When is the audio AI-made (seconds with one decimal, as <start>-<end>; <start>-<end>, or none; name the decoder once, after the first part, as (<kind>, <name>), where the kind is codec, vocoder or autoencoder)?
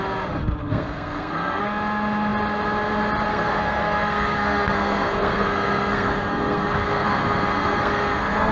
0.6-1.6 (codec, SNAC); 3.3-8.5